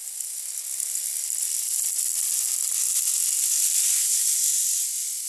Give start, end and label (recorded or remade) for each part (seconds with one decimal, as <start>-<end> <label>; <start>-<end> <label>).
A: 0.0-5.3 recorded